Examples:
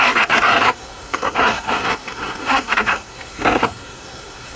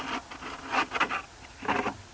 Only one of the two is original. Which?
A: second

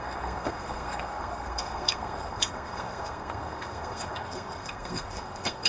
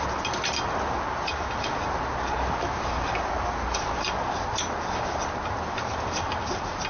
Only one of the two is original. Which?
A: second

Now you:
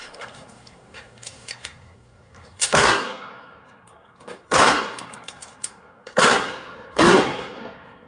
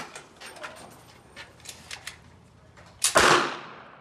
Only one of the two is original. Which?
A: second